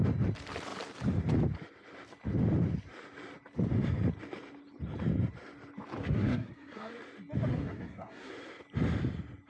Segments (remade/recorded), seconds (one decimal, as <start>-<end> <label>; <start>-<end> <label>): 0.0-6.0 recorded; 6.0-6.9 remade; 6.9-7.5 recorded; 7.5-8.3 remade; 8.3-9.5 recorded